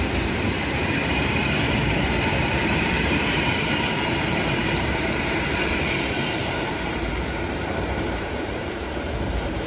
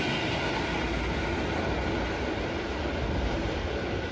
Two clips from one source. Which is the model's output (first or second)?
first